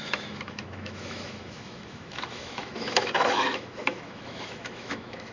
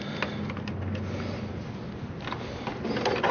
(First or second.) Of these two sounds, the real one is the second